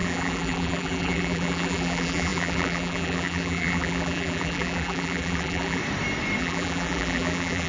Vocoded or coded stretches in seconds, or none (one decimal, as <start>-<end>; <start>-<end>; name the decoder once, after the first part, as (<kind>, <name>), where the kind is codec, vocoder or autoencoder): 0.0-5.8 (vocoder, BigVGAN v2); 6.4-7.7